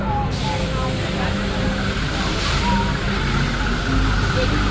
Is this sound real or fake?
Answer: real